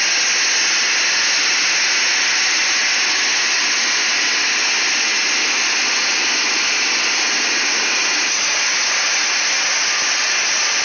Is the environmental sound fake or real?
real